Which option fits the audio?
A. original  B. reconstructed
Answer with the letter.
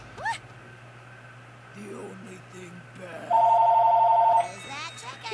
A